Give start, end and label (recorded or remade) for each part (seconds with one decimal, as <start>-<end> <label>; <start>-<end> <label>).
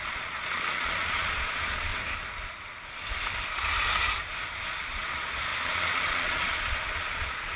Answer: 0.0-1.9 remade; 1.9-4.7 recorded; 4.7-7.6 remade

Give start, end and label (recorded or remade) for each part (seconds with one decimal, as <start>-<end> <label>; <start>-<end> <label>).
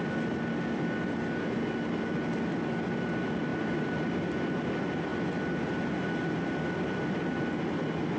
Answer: 0.0-8.2 recorded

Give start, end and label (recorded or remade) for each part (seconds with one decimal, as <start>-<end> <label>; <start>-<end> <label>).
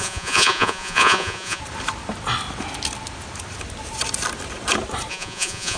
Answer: 0.0-1.6 remade; 1.6-5.1 recorded; 5.1-5.8 remade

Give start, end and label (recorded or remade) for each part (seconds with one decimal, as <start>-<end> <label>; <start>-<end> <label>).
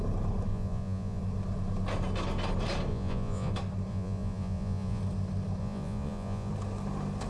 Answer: 0.0-0.5 recorded; 0.5-1.2 remade; 1.2-2.9 recorded; 2.9-3.5 remade; 3.5-3.9 recorded; 3.9-5.0 remade; 5.0-5.6 recorded; 5.6-6.5 remade; 6.5-7.3 recorded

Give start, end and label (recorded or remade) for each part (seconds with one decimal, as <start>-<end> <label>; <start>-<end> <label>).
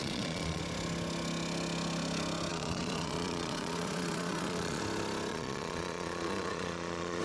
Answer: 0.0-0.6 remade; 0.6-2.5 recorded; 2.5-4.8 remade; 4.8-5.3 recorded; 5.3-7.2 remade